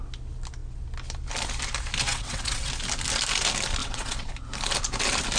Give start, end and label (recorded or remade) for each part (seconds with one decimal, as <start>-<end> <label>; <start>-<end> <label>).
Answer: 0.0-2.1 recorded; 2.1-2.7 remade; 2.7-3.8 recorded; 3.8-4.3 remade; 4.3-5.4 recorded